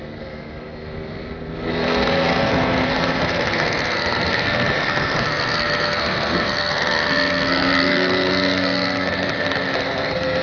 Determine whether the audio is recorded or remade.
remade